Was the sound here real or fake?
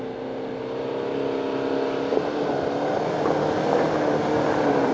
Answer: real